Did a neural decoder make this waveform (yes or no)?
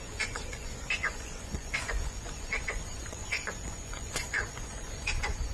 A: yes